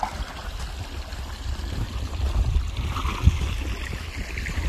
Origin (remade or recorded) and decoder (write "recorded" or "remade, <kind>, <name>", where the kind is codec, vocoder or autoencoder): recorded